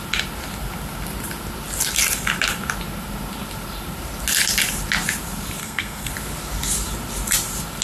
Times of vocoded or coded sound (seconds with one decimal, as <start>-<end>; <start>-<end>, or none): 5.6-6.1